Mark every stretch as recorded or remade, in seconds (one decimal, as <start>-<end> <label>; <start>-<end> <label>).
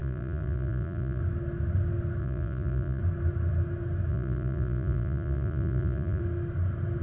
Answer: 0.0-1.2 remade; 1.2-2.2 recorded; 2.2-3.0 remade; 3.0-4.1 recorded; 4.1-6.2 remade; 6.2-7.0 recorded